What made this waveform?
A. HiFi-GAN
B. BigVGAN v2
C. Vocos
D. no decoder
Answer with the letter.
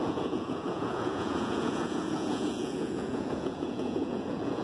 C